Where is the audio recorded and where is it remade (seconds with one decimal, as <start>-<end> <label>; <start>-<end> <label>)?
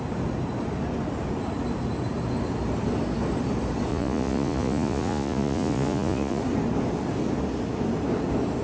0.0-3.9 recorded; 3.9-6.4 remade; 6.4-8.6 recorded